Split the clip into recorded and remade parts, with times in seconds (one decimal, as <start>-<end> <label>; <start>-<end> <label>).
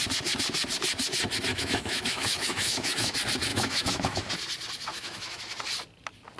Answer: 0.0-1.5 recorded; 1.5-3.1 remade; 3.1-3.5 recorded; 3.5-4.3 remade; 4.3-4.9 recorded; 4.9-5.4 remade; 5.4-6.4 recorded